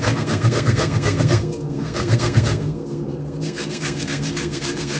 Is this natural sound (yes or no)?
no